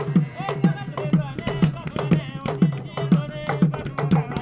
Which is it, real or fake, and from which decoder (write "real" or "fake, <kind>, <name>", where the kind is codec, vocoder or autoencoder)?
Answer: real